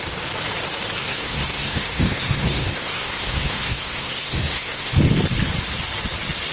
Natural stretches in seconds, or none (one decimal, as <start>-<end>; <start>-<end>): 0.0-1.0; 4.9-6.5